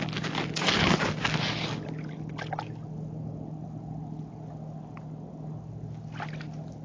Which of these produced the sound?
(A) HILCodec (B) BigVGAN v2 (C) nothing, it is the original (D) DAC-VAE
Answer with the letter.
C